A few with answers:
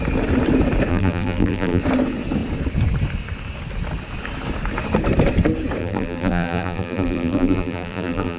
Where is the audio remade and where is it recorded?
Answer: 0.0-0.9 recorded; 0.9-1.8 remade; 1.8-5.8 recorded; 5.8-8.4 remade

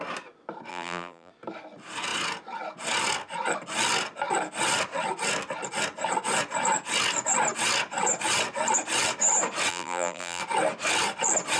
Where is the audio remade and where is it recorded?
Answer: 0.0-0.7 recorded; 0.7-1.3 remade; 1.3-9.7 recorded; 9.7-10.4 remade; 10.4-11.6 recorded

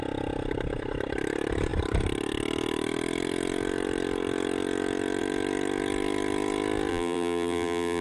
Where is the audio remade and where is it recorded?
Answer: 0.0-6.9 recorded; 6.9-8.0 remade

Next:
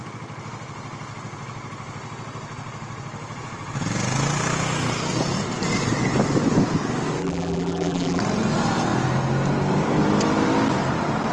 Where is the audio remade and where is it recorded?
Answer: 0.0-7.2 recorded; 7.2-8.2 remade; 8.2-11.3 recorded